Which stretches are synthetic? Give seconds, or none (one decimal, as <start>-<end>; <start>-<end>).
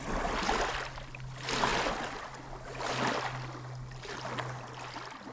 none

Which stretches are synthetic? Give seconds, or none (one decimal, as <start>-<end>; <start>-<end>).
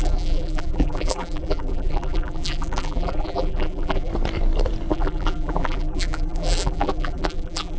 0.0-4.1; 4.9-7.8